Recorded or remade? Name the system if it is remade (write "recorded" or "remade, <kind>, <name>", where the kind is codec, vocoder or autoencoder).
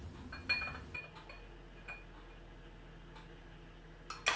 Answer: recorded